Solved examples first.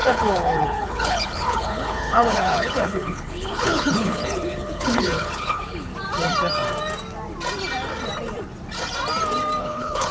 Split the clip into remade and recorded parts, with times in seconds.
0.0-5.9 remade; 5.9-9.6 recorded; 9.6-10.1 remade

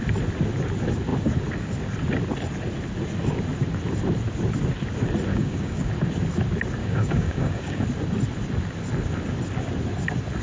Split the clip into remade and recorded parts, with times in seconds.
0.0-5.3 recorded; 5.3-5.9 remade; 5.9-6.8 recorded; 6.8-7.8 remade; 7.8-10.4 recorded

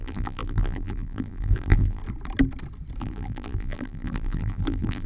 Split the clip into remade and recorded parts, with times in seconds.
0.0-2.0 remade; 2.0-3.0 recorded; 3.0-5.1 remade

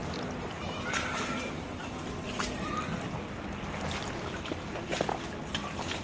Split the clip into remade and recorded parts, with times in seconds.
0.0-6.0 recorded